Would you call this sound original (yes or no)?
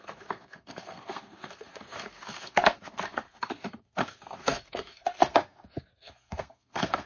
no